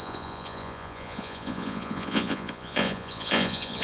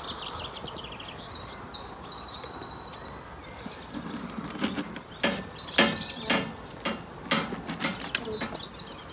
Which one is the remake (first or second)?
first